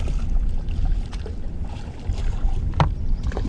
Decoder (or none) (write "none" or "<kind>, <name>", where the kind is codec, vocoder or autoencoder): vocoder, BigVGAN v2